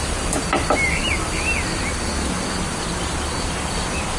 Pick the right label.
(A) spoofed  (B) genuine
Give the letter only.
B